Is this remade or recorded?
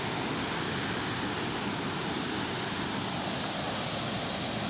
recorded